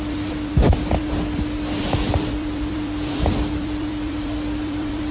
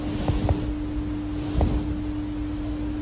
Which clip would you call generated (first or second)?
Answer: first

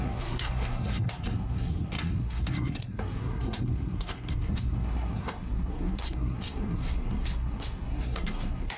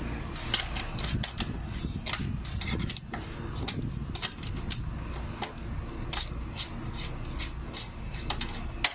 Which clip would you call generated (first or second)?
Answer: first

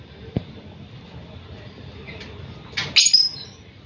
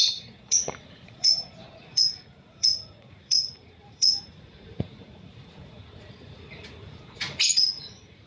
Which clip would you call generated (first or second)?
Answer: second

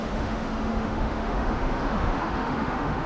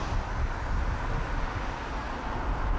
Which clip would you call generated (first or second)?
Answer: first